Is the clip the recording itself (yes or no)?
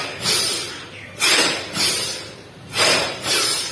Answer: no